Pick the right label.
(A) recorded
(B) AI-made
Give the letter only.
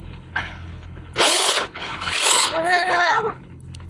B